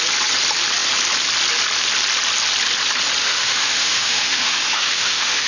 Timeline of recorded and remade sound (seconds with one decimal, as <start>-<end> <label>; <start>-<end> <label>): 0.0-3.2 recorded; 3.2-5.5 remade